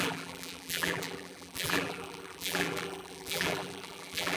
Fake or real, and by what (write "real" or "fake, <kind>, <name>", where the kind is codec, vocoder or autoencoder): fake, vocoder, BigVGAN v2